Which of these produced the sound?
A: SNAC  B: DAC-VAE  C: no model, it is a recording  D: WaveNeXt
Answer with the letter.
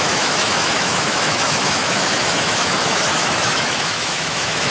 B